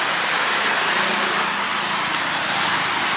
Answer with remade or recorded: recorded